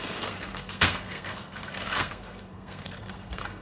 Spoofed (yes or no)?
yes